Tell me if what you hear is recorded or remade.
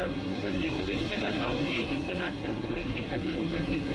remade